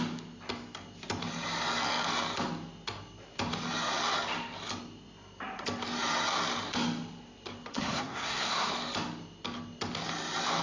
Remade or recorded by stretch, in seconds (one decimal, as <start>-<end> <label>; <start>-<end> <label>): 0.0-7.7 recorded; 7.7-8.7 remade; 8.7-10.6 recorded